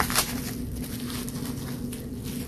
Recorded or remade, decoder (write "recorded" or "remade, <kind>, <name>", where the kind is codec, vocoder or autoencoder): recorded